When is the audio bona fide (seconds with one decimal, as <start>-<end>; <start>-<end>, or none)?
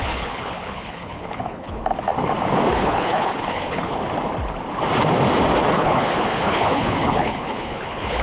1.8-2.7; 4.0-5.7